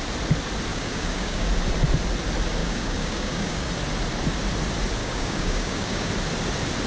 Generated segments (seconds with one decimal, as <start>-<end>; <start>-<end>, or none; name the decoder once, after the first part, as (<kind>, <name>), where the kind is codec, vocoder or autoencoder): 0.7-1.5 (codec, DAC); 2.6-3.7; 5.0-6.1